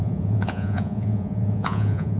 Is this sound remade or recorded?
remade